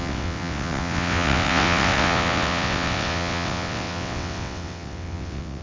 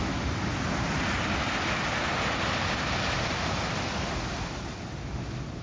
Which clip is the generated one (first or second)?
first